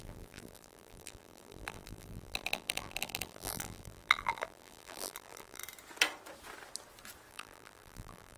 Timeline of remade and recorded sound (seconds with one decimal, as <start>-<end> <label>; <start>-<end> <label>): 0.0-5.6 remade; 5.6-7.3 recorded; 7.3-8.4 remade